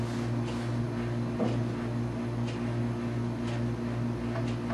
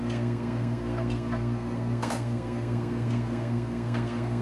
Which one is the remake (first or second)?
second